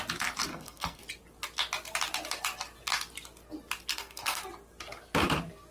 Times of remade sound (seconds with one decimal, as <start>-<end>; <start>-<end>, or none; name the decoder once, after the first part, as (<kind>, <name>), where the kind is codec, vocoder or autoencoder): 0.5-1.0 (codec, SNAC); 3.9-4.4